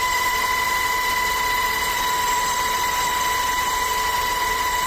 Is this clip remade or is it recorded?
remade